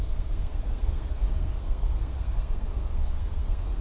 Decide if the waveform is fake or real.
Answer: fake